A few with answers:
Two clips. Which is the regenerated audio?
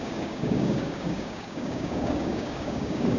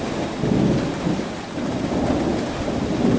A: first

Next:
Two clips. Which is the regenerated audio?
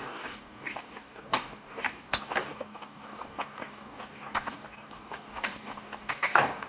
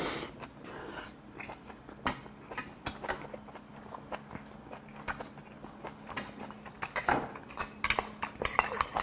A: first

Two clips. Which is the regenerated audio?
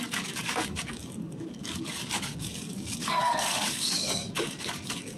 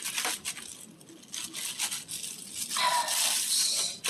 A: first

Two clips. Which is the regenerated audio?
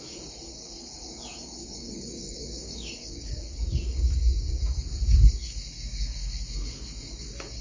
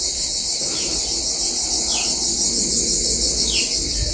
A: first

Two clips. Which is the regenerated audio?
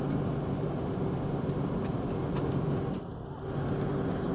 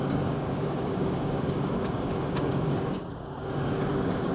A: second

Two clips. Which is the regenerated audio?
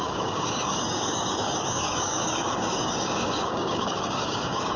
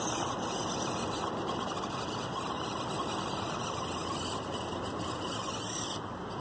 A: first